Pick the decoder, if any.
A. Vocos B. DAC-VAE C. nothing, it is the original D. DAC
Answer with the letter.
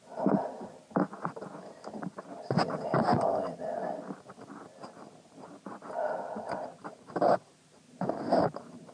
C